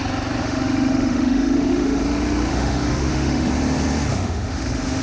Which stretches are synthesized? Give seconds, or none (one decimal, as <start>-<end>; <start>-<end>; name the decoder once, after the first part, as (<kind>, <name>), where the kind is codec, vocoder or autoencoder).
0.4-2.0 (autoencoder, DAC-VAE); 2.5-3.5; 4.1-5.0